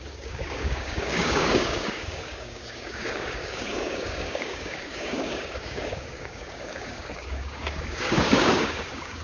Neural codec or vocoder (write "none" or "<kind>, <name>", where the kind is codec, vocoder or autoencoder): codec, DAC